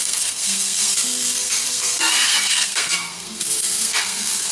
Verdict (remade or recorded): remade